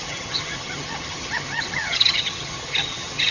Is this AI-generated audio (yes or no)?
yes